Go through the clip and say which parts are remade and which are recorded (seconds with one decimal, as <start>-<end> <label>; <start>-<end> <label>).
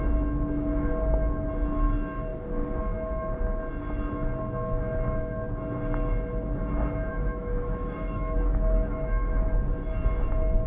0.0-7.1 recorded; 7.1-9.5 remade; 9.5-10.7 recorded